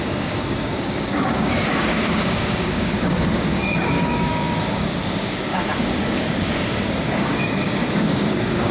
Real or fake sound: fake